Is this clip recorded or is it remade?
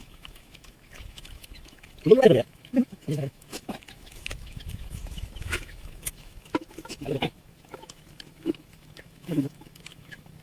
remade